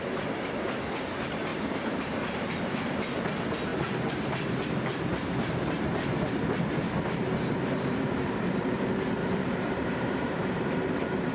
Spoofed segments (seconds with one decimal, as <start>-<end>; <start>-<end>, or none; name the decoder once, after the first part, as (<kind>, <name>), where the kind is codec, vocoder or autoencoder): 1.5-2.1 (vocoder, BigVGAN v2); 9.2-10.6